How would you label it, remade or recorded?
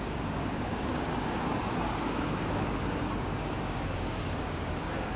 remade